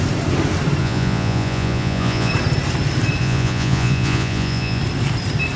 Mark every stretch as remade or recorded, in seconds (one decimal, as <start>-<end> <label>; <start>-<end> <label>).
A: 0.0-0.8 recorded; 0.8-2.3 remade; 2.3-3.2 recorded; 3.2-4.8 remade; 4.8-5.6 recorded